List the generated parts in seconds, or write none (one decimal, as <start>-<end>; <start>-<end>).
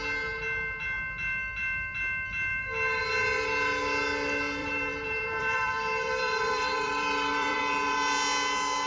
2.5-3.0; 4.6-7.6